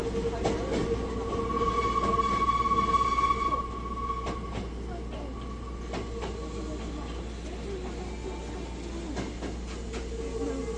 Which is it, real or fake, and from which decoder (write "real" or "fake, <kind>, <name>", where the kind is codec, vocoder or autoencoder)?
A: real